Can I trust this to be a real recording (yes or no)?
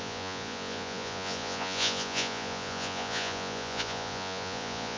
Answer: no